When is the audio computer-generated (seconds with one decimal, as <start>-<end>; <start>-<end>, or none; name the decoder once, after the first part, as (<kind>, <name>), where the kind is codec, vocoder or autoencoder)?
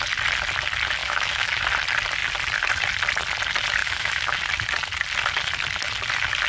1.0-1.6 (autoencoder, DAC-VAE); 3.8-4.4